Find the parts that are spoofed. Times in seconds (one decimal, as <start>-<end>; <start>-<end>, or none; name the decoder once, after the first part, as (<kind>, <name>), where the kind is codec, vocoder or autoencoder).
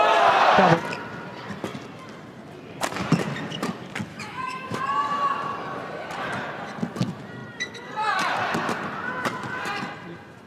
4.1-4.8 (autoencoder, DAC-VAE)